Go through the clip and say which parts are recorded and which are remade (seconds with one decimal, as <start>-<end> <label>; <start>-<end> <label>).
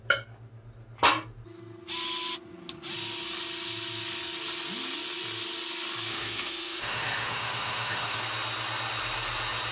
0.0-6.1 recorded; 6.1-8.2 remade; 8.2-9.7 recorded